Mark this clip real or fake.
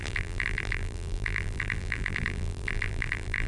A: fake